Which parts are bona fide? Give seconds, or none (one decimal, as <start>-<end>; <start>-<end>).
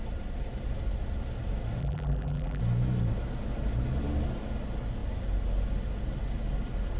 0.0-1.8; 2.6-7.0